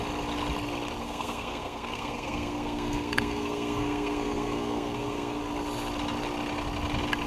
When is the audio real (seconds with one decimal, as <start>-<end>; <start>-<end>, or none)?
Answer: 0.0-1.0; 5.4-7.3